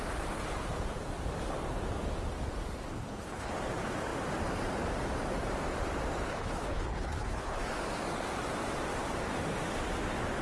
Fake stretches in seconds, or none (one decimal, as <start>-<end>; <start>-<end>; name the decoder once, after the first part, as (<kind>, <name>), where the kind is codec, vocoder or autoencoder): 2.9-3.5 (codec, HILCodec); 6.3-7.6